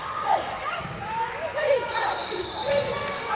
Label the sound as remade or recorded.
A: remade